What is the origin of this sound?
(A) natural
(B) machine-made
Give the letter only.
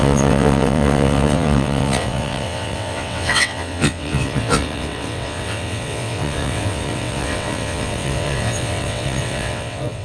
B